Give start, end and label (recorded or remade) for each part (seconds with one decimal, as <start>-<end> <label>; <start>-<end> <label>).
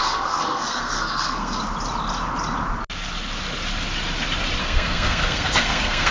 0.0-1.6 remade; 1.6-4.6 recorded; 4.6-6.1 remade